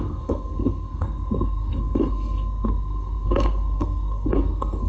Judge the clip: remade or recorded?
remade